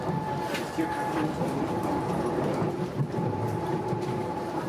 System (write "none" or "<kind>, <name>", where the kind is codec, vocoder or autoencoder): none